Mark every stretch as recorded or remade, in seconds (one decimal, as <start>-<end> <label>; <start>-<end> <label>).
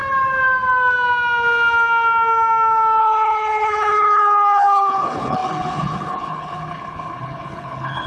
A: 0.0-3.0 recorded; 3.0-8.1 remade